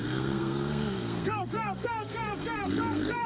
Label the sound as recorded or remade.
remade